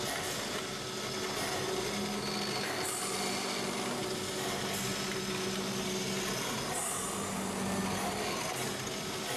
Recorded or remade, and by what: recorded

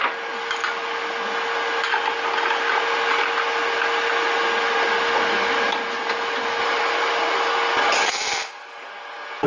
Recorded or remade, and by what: recorded